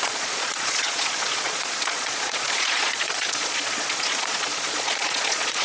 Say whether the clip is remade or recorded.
remade